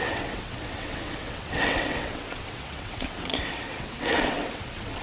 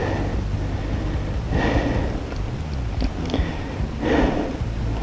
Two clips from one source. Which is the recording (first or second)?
second